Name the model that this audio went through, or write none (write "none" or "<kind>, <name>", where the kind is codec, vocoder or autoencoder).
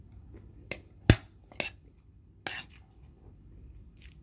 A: none